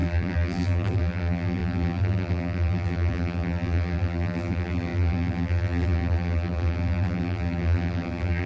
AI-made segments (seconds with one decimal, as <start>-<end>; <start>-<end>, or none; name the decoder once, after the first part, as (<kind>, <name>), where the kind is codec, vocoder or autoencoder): 0.0-8.5 (vocoder, BigVGAN v2)